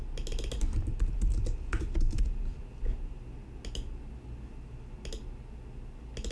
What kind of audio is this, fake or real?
real